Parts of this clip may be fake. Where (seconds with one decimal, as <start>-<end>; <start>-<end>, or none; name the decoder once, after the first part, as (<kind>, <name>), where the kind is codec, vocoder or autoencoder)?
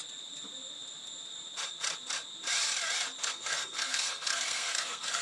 3.2-5.2 (codec, SNAC)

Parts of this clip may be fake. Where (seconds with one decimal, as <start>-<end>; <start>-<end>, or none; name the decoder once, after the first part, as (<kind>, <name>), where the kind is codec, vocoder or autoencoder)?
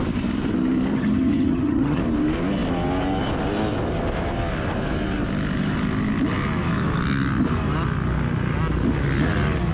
0.9-2.0 (vocoder, HiFi-GAN)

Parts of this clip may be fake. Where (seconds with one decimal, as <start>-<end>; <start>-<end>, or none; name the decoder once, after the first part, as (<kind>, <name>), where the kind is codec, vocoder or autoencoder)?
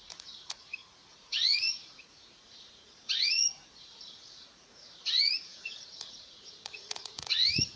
0.0-7.8 (vocoder, Vocos)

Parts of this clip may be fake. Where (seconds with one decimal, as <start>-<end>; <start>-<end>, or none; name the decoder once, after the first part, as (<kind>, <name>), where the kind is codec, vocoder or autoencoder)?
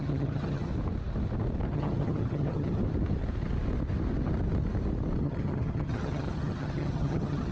0.0-0.7 (vocoder, HiFi-GAN); 1.7-2.8; 5.2-7.5